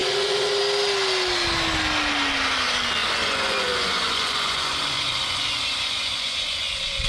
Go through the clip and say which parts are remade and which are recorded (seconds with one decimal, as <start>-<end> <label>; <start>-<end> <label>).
0.0-0.6 remade; 0.6-3.0 recorded; 3.0-7.1 remade